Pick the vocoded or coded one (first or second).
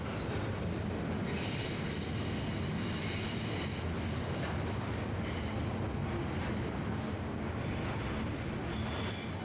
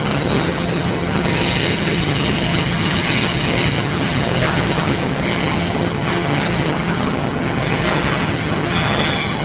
second